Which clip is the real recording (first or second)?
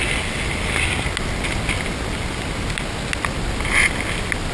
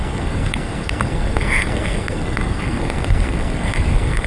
first